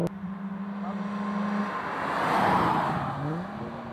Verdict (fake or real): real